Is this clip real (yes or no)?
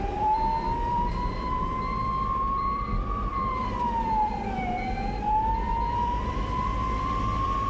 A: no